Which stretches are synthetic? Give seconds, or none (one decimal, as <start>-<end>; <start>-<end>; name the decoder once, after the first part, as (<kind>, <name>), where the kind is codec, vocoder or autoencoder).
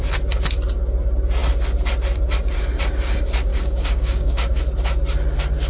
3.5-4.6 (codec, DAC)